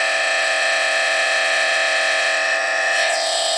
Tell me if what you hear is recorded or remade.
remade